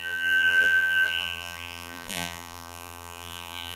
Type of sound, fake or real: fake